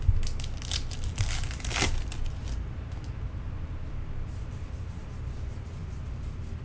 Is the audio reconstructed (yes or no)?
no